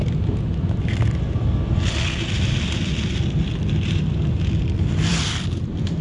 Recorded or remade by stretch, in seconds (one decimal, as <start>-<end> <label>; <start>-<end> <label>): 0.0-5.1 recorded; 5.1-6.0 remade